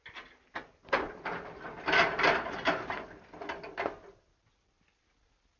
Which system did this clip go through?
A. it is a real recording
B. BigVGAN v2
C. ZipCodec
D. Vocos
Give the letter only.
A